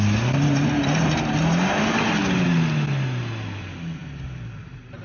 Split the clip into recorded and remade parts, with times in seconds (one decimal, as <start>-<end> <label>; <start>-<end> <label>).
0.0-5.0 recorded